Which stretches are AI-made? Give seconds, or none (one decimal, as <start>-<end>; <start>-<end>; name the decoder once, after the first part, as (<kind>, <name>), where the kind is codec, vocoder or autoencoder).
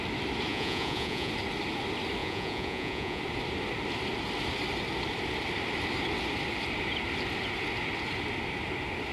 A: 0.5-1.3 (vocoder, Vocos); 2.2-3.2